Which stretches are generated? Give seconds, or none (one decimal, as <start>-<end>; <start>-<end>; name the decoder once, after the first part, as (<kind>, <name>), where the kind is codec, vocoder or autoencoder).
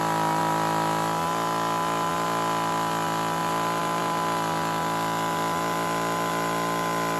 none